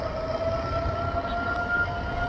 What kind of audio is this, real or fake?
real